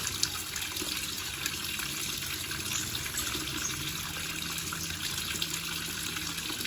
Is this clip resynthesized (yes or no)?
no